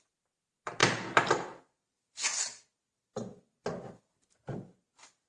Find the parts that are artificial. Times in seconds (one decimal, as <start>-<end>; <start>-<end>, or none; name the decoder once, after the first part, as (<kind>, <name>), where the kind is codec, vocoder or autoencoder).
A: none